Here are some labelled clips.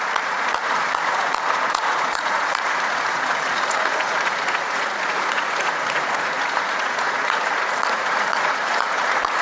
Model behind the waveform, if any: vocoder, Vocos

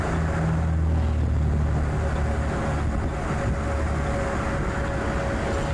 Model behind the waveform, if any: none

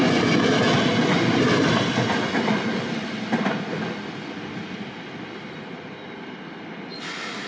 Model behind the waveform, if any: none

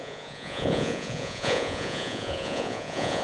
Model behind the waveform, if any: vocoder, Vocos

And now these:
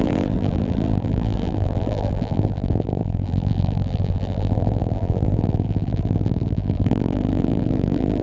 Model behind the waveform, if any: vocoder, BigVGAN v2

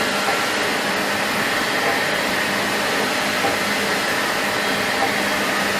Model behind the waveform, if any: none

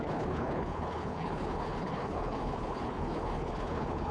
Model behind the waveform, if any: codec, HILCodec